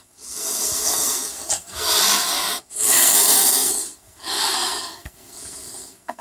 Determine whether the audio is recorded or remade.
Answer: remade